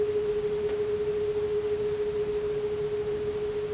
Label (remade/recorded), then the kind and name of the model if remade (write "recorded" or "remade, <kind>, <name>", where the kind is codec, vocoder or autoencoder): recorded